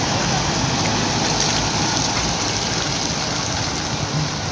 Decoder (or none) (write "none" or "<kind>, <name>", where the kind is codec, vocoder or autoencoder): none